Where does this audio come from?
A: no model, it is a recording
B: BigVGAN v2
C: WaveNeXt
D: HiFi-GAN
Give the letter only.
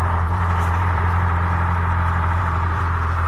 B